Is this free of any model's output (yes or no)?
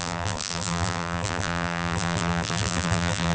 no